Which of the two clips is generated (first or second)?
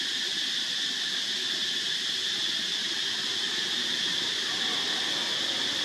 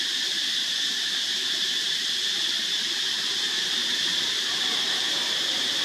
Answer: second